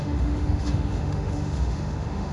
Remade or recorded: remade